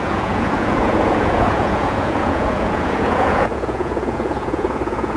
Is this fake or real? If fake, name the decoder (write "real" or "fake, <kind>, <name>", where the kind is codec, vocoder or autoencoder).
fake, vocoder, Vocos